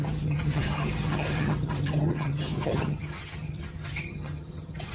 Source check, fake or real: fake